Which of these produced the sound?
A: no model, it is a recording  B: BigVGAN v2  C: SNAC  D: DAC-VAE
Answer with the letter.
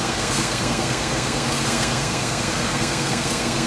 C